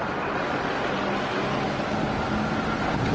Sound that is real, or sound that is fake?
real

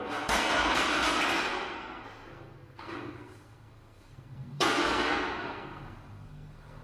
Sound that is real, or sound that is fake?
fake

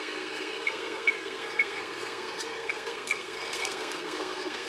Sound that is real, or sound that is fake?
fake